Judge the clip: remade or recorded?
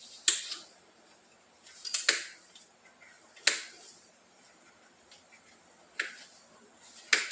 recorded